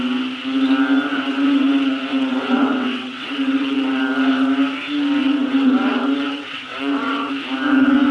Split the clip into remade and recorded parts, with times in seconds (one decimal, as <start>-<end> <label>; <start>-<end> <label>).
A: 0.0-1.1 recorded; 1.1-4.0 remade; 4.0-5.2 recorded; 5.2-7.3 remade; 7.3-8.1 recorded